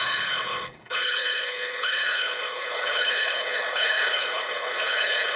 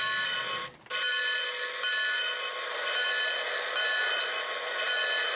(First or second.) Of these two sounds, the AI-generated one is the first